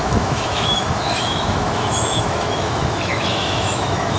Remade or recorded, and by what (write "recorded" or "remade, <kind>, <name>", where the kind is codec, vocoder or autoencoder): remade, autoencoder, DAC-VAE